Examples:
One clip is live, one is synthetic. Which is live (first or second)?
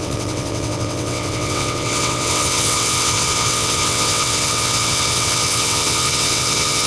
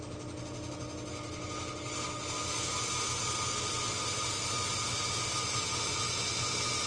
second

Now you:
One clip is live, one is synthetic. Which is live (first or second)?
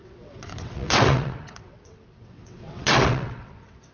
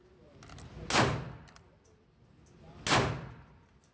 second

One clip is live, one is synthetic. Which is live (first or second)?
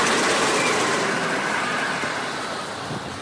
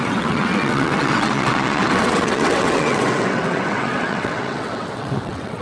first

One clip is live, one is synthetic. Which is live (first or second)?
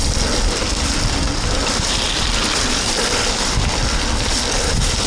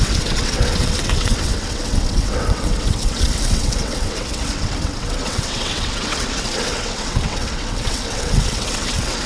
first